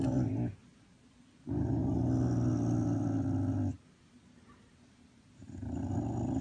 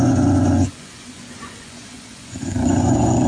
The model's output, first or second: second